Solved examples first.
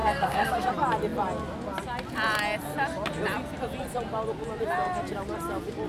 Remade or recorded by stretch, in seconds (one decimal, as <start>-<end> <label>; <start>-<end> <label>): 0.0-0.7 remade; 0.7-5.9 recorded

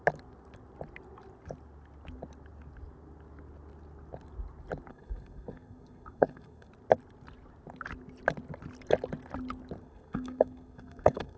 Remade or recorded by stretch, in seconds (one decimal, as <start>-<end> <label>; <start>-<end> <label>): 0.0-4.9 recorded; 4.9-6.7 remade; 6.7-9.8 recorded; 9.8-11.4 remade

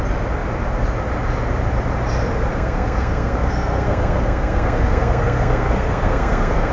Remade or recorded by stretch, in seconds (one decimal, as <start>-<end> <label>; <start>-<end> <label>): 0.0-2.5 recorded; 2.5-6.7 remade

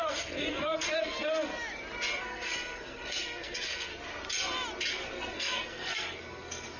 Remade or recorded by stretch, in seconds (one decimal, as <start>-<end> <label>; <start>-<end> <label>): 0.0-1.5 remade; 1.5-2.2 recorded; 2.2-3.9 remade; 3.9-4.9 recorded; 4.9-6.8 remade

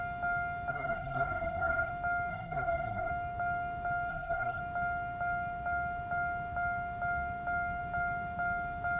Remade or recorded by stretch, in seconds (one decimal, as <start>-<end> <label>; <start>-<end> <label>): 0.0-0.7 recorded; 0.7-1.9 remade; 1.9-2.3 recorded; 2.3-3.1 remade; 3.1-4.1 recorded; 4.1-4.6 remade; 4.6-9.0 recorded

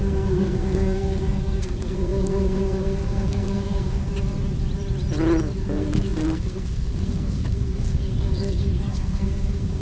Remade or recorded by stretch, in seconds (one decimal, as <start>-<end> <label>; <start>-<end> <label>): 0.0-4.1 remade; 4.1-5.6 recorded; 5.6-9.8 remade